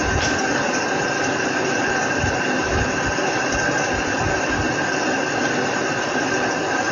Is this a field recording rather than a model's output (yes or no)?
yes